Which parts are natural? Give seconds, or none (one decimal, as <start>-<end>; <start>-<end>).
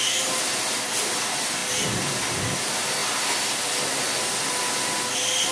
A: 0.0-5.5